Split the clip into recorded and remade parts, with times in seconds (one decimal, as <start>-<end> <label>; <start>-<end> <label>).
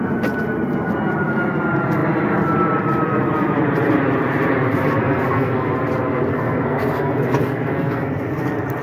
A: 0.0-5.0 recorded; 5.0-5.7 remade; 5.7-6.3 recorded; 6.3-8.4 remade; 8.4-8.8 recorded